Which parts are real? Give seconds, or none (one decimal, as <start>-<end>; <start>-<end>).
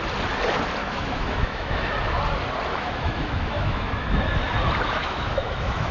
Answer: 0.0-0.8; 1.9-2.7; 4.3-5.0